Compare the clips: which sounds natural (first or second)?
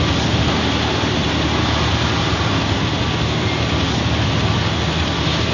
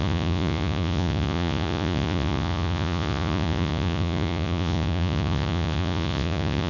first